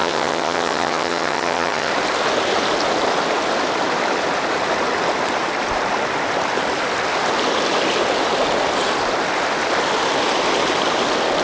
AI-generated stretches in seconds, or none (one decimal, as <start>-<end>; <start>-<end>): 0.0-1.9